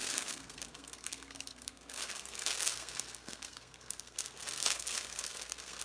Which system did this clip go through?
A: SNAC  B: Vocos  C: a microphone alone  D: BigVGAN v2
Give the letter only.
A